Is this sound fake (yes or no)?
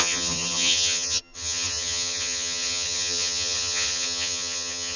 yes